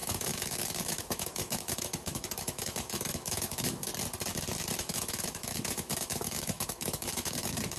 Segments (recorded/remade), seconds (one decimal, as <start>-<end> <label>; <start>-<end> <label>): 0.0-3.9 remade; 3.9-4.8 recorded; 4.8-7.8 remade